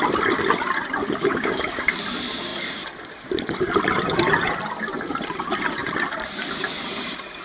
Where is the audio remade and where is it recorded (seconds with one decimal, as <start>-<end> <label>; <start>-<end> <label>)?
0.0-1.0 recorded; 1.0-1.9 remade; 1.9-7.4 recorded